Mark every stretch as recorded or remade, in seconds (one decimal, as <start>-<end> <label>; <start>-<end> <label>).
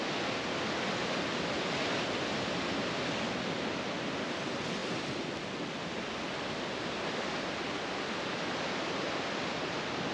0.0-10.1 recorded